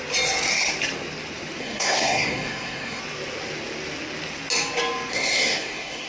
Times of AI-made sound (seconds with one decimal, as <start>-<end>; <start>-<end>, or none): 1.6-3.0; 5.1-6.1